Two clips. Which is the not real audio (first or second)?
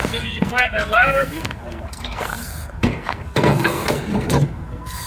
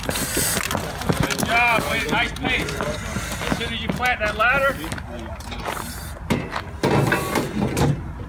first